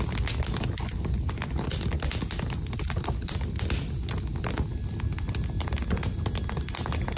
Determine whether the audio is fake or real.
real